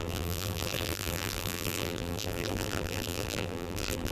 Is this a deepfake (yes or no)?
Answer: yes